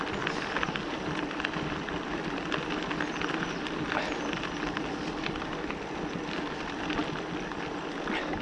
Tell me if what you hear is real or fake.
real